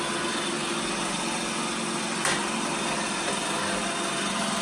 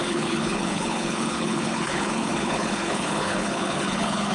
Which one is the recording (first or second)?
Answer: first